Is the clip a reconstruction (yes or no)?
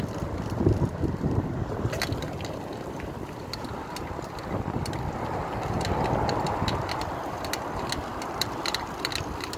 no